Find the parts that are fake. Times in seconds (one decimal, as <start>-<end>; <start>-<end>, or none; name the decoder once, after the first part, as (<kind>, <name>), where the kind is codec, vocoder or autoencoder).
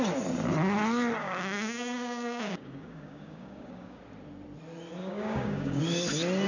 1.2-4.0 (codec, DAC); 5.0-5.8